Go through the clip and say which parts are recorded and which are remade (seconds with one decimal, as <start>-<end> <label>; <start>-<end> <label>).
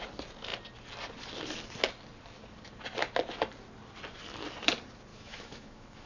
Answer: 0.0-5.1 recorded; 5.1-6.1 remade